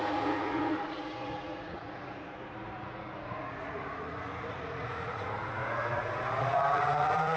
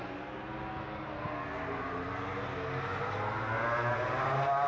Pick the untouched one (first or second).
second